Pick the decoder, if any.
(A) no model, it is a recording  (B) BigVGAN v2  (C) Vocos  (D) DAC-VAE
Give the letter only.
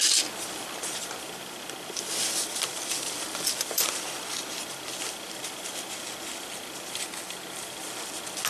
A